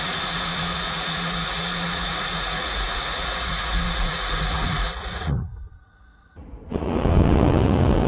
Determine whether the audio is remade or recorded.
remade